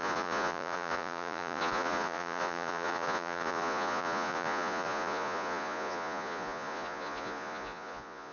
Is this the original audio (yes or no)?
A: no